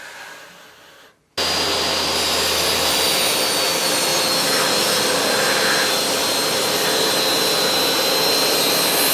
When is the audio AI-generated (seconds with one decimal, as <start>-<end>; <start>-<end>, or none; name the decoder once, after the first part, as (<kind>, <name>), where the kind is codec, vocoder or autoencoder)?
none